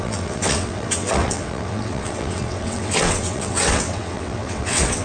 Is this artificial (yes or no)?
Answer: yes